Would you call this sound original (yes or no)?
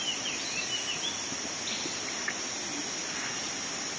yes